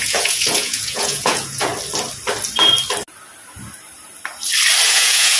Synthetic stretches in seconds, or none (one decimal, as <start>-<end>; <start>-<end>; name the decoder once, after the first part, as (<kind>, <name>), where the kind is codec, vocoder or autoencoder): 0.0-1.7 (vocoder, Vocos); 4.9-5.4